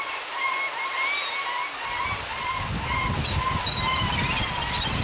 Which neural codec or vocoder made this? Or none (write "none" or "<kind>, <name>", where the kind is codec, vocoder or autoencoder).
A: none